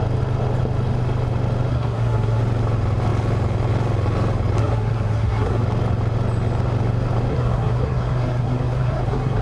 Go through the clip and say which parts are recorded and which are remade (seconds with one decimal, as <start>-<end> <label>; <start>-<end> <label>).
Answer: 0.0-1.7 recorded; 1.7-2.4 remade; 2.4-4.6 recorded; 4.6-5.6 remade; 5.6-7.3 recorded; 7.3-9.4 remade

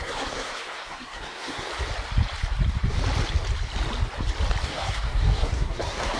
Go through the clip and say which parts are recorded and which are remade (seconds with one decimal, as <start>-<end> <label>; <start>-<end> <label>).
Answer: 0.0-1.7 remade; 1.7-4.6 recorded; 4.6-6.2 remade

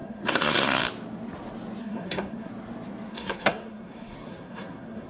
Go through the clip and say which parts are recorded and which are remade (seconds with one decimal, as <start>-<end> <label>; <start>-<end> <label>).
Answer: 0.0-0.8 remade; 0.8-1.8 recorded; 1.8-2.5 remade; 2.5-3.1 recorded; 3.1-5.1 remade

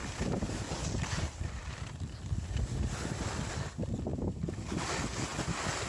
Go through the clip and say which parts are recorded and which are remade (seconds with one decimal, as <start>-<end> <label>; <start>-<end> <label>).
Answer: 0.0-5.9 recorded

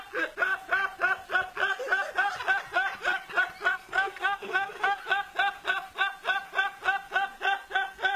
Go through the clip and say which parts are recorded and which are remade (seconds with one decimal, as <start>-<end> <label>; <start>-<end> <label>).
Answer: 0.0-3.7 recorded; 3.7-5.0 remade; 5.0-8.2 recorded

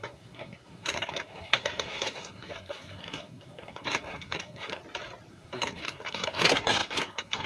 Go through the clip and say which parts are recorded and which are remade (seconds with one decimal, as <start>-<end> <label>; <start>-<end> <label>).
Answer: 0.0-4.8 remade; 4.8-5.3 recorded; 5.3-7.5 remade

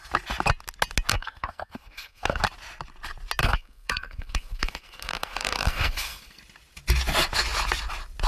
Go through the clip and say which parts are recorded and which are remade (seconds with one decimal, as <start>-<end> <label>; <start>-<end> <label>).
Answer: 0.0-1.1 recorded; 1.1-2.4 remade; 2.4-3.4 recorded; 3.4-6.4 remade; 6.4-8.3 recorded

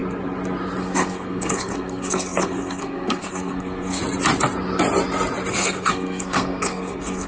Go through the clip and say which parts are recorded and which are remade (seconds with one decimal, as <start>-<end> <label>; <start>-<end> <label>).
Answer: 0.0-0.8 recorded; 0.8-4.0 remade; 4.0-5.5 recorded; 5.5-7.3 remade